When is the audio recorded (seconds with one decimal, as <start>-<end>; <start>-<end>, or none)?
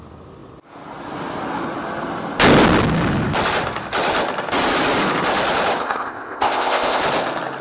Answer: 0.0-5.8; 7.0-7.6